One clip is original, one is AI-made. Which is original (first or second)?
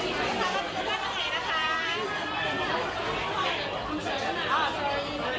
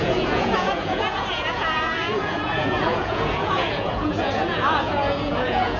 first